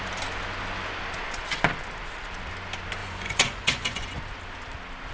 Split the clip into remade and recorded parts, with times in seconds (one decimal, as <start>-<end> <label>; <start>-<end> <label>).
0.0-3.0 recorded; 3.0-4.2 remade; 4.2-5.1 recorded